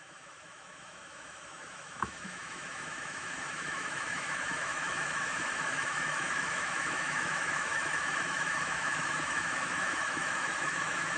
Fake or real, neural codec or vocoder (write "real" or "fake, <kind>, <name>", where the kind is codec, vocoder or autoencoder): fake, autoencoder, DAC-VAE